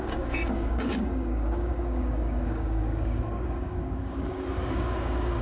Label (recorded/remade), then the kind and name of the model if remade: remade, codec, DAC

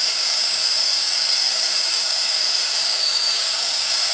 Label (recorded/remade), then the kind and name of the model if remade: remade, codec, DAC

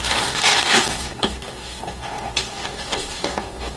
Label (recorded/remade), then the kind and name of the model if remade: remade, codec, DAC